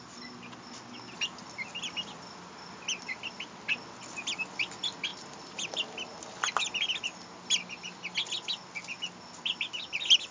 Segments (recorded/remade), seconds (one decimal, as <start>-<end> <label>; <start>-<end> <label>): 0.0-5.1 recorded; 5.1-5.7 remade; 5.7-10.3 recorded